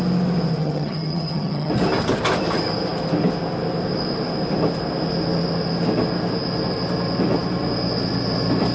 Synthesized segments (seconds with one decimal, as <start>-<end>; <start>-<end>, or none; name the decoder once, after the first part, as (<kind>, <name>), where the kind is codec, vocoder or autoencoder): 0.6-1.7 (vocoder, HiFi-GAN)